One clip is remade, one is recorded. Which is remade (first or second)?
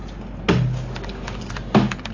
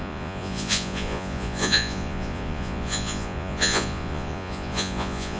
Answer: second